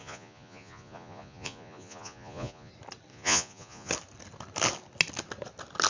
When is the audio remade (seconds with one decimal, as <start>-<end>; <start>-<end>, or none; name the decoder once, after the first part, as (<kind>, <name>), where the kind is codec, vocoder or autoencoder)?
0.0-2.7 (vocoder, Vocos); 3.1-3.9

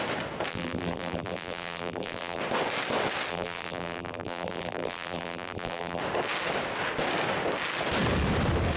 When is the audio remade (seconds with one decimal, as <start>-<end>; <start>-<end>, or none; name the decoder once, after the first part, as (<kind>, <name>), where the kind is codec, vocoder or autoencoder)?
0.5-2.4 (vocoder, BigVGAN v2); 3.3-6.0

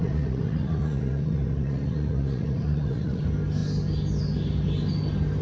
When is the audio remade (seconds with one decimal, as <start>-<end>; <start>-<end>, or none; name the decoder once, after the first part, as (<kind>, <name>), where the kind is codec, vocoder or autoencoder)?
0.0-3.2 (vocoder, Vocos)